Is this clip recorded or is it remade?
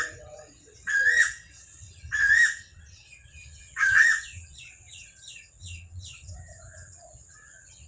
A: remade